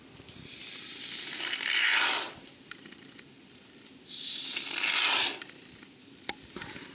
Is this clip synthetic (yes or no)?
no